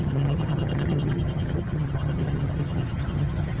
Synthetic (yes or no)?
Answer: yes